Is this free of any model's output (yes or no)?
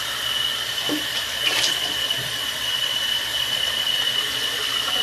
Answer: yes